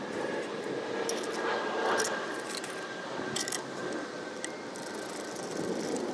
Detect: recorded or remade recorded